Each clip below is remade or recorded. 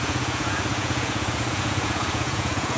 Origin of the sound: remade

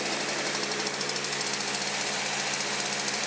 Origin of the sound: recorded